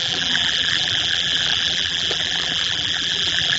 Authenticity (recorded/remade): remade